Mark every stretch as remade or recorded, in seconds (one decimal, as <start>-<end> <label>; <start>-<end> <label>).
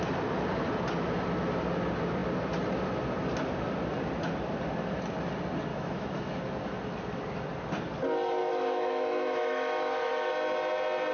0.0-5.7 recorded; 5.7-6.4 remade; 6.4-8.4 recorded; 8.4-10.3 remade; 10.3-11.1 recorded